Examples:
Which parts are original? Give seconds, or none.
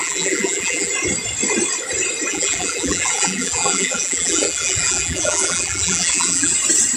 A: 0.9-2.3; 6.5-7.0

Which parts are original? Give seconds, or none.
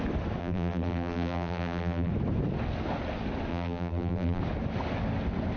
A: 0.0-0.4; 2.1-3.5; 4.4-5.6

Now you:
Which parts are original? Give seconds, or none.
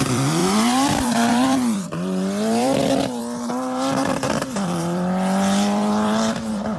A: none